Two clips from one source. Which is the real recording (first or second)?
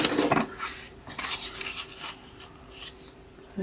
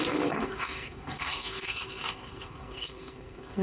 first